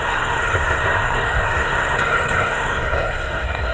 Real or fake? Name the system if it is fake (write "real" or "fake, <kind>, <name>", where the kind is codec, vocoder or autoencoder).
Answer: fake, codec, SNAC